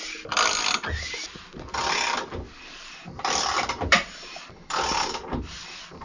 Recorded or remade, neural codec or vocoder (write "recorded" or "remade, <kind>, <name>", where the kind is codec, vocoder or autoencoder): recorded